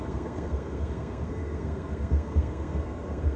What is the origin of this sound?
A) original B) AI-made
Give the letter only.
B